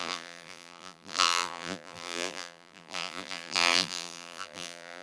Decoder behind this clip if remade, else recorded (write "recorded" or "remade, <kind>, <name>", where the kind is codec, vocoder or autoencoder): remade, vocoder, BigVGAN v2